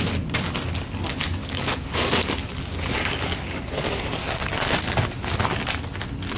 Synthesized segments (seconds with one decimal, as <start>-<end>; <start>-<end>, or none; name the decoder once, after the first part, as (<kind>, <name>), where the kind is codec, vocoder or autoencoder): 1.4-4.7 (codec, DAC)